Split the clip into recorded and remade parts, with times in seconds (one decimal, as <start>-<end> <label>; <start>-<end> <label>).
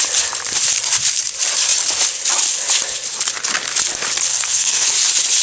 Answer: 0.0-4.3 recorded; 4.3-4.9 remade; 4.9-5.4 recorded